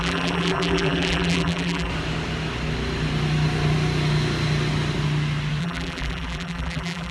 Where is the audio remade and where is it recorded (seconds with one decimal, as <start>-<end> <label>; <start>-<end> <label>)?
0.0-1.9 remade; 1.9-5.6 recorded; 5.6-7.1 remade